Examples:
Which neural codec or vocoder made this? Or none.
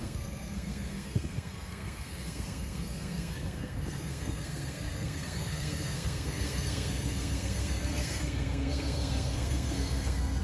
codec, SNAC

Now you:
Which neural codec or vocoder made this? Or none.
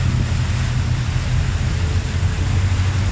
none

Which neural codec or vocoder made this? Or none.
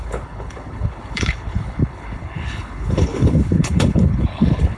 codec, HILCodec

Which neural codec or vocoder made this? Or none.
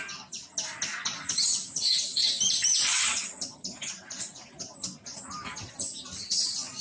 none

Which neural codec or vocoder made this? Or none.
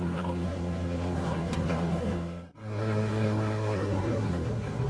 codec, SNAC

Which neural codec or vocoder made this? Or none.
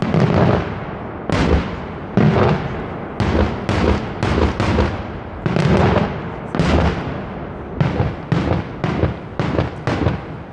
none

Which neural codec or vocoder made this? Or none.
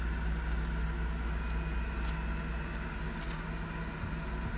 none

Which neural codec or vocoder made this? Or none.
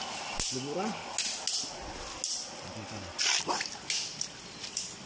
none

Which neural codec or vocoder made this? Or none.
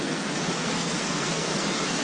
codec, SNAC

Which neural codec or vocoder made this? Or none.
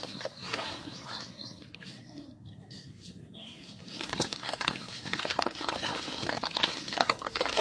codec, SNAC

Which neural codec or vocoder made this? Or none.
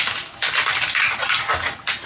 none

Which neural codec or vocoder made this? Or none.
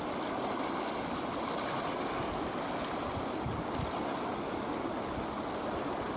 none